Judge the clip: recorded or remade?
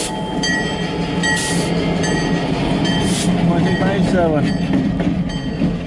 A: recorded